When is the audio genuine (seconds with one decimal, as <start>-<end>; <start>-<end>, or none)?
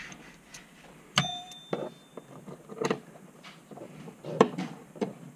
0.0-0.5; 1.6-2.1